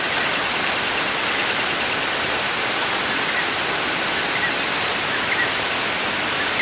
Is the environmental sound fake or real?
real